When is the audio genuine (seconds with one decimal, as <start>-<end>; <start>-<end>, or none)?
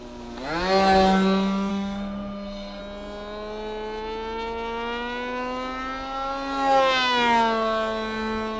0.0-1.7; 2.8-8.6